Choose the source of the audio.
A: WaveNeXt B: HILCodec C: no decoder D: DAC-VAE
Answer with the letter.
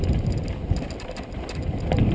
C